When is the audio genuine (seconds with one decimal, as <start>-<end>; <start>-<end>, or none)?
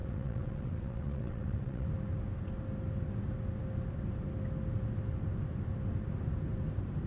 1.9-7.1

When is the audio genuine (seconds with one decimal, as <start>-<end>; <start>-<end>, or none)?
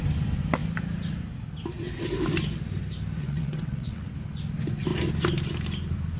0.0-3.2; 4.1-6.2